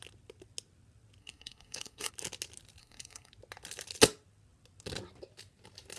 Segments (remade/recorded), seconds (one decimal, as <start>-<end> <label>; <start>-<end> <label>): 0.0-1.2 recorded; 1.2-2.1 remade; 2.1-2.8 recorded; 2.8-3.3 remade; 3.3-6.0 recorded